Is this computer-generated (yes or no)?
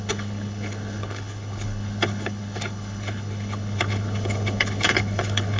yes